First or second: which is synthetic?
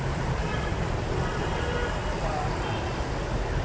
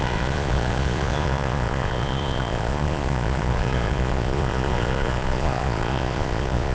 second